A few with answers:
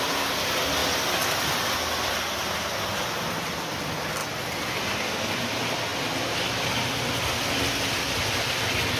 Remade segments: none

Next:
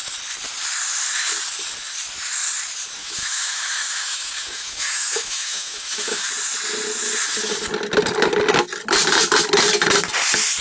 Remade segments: 3.0-6.3 (autoencoder, DAC-VAE)

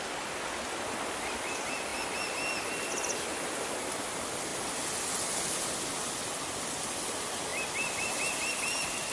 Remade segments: none

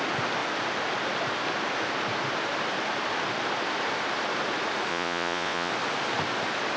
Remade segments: 4.9-5.7 (vocoder, Vocos)

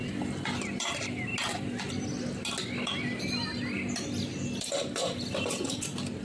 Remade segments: none